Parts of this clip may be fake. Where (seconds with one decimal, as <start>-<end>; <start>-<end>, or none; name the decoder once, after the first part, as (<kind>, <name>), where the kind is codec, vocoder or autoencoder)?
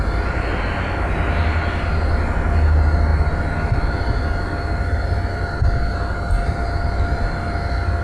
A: none